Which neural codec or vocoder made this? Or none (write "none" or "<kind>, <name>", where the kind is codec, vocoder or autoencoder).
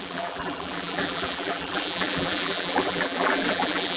vocoder, BigVGAN v2